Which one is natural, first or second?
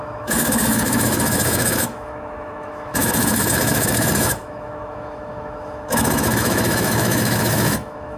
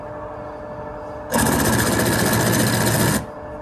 second